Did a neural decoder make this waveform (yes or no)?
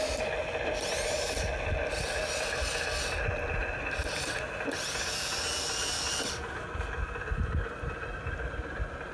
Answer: no